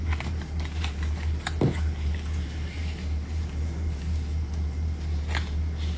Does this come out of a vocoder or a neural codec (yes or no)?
yes